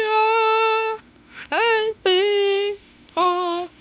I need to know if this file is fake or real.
fake